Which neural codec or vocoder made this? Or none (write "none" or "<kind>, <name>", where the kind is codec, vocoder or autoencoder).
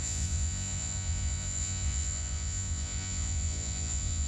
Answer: vocoder, Vocos